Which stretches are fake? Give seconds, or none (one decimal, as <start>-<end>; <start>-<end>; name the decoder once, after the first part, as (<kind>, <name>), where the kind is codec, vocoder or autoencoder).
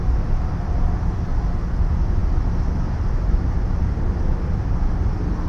none